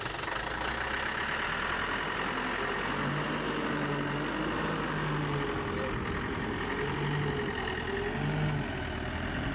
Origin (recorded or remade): recorded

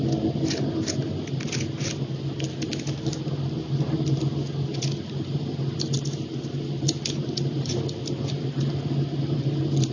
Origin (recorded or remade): recorded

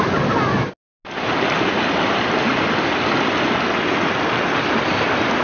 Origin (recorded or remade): recorded